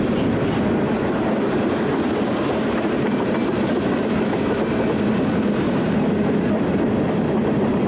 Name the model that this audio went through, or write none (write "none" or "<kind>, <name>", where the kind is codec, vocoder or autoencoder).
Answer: none